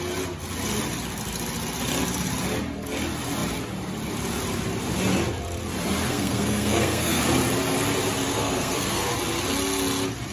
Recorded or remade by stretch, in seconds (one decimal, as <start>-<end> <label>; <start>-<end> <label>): 0.0-6.1 recorded; 6.1-7.2 remade; 7.2-8.3 recorded; 8.3-9.1 remade; 9.1-10.3 recorded